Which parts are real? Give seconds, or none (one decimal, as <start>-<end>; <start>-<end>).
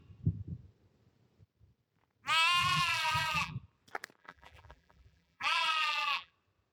0.0-2.6; 3.5-4.2; 6.3-6.7